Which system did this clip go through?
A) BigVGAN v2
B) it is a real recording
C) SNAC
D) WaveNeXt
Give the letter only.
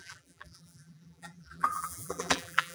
A